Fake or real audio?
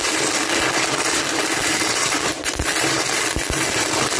real